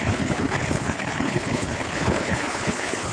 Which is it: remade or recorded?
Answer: remade